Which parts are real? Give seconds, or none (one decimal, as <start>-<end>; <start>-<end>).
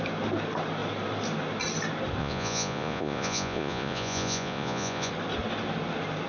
0.0-2.2; 5.1-6.3